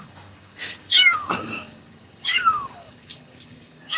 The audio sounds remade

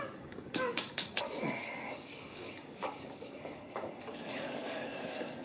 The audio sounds remade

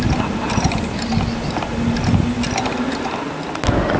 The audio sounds recorded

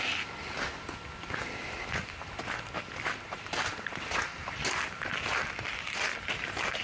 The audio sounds recorded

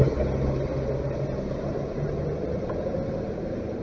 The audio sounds recorded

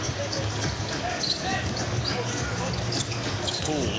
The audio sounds remade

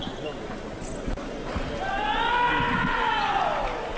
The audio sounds recorded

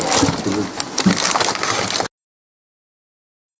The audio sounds recorded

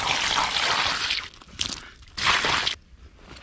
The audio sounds recorded